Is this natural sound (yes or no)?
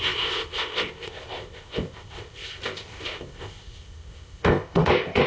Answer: no